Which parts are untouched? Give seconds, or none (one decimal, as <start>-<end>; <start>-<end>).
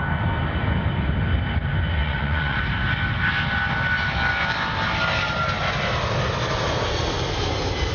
0.0-2.0; 2.6-7.9